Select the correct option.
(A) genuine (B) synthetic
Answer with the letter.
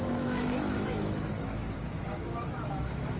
B